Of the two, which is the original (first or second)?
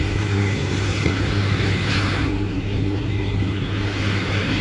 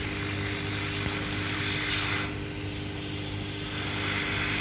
second